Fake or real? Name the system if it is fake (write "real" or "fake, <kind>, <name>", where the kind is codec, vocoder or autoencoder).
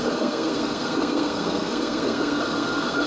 fake, codec, SNAC